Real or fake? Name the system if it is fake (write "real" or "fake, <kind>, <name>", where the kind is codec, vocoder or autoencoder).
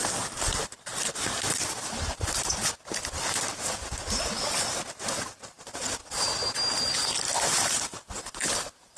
real